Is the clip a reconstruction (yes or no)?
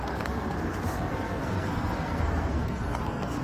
yes